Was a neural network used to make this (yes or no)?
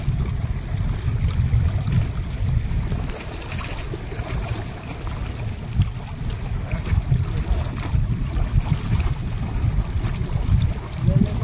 no